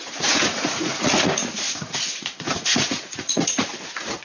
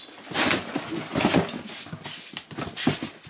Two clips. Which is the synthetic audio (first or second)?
first